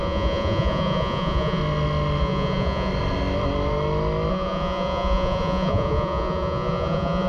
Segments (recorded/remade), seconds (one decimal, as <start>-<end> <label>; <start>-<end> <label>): 0.0-1.6 remade; 1.6-2.2 recorded; 2.2-2.9 remade; 2.9-4.3 recorded; 4.3-7.3 remade